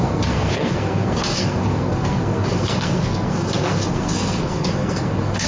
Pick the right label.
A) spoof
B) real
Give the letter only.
A